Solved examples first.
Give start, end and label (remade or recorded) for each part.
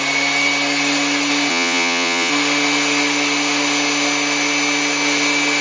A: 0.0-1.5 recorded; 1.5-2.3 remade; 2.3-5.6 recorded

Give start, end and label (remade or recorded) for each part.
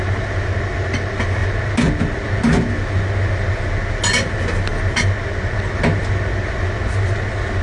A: 0.0-7.6 recorded